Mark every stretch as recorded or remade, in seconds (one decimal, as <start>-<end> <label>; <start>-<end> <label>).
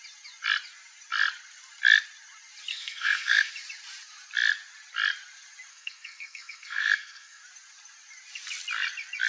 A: 0.0-2.7 recorded; 2.7-3.5 remade; 3.5-5.7 recorded; 5.7-7.4 remade; 7.4-9.3 recorded